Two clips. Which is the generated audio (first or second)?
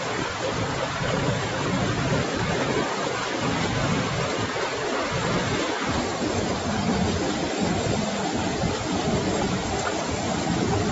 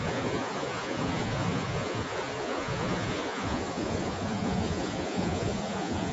second